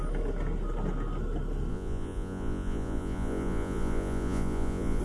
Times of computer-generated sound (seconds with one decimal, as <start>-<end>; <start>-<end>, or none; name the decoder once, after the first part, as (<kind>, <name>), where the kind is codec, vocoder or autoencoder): 1.7-5.0 (vocoder, Vocos)